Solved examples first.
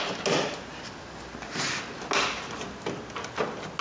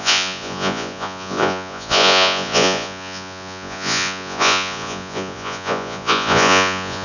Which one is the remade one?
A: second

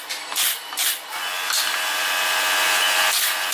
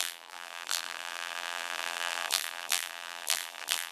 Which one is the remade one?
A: second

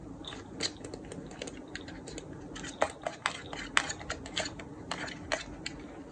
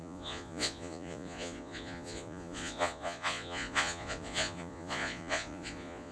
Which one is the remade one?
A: second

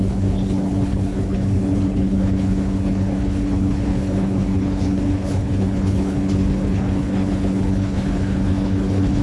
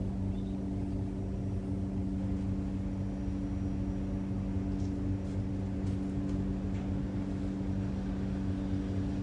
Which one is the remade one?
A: first